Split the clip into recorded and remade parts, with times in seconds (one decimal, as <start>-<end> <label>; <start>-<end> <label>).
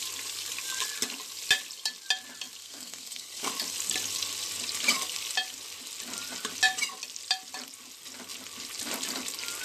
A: 0.0-2.6 recorded; 2.6-3.5 remade; 3.5-9.6 recorded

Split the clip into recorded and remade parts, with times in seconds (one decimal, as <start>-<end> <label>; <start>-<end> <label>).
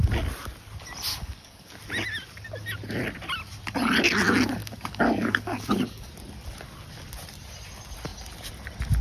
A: 0.0-1.1 recorded; 1.1-1.7 remade; 1.7-4.6 recorded; 4.6-6.1 remade; 6.1-9.0 recorded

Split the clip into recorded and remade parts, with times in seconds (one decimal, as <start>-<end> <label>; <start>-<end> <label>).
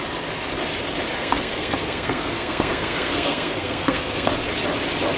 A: 0.0-1.2 recorded; 1.2-4.3 remade; 4.3-5.2 recorded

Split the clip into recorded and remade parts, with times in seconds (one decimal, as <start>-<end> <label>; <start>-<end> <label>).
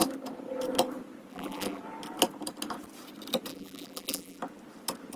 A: 0.0-1.3 recorded; 1.3-1.8 remade; 1.8-3.5 recorded; 3.5-4.4 remade; 4.4-5.2 recorded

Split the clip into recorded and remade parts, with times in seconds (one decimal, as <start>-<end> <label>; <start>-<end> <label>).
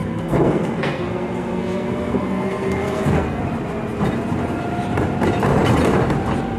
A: 0.0-3.4 remade; 3.4-6.6 recorded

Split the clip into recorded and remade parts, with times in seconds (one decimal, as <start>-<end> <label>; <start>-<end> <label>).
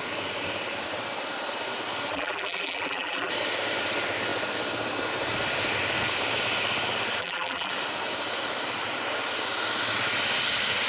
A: 0.0-2.1 recorded; 2.1-3.3 remade; 3.3-7.2 recorded; 7.2-7.7 remade; 7.7-10.9 recorded